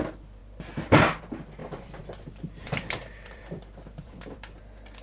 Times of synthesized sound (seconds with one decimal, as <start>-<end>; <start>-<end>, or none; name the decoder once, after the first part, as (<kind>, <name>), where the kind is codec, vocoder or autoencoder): 1.6-4.6 (vocoder, BigVGAN v2)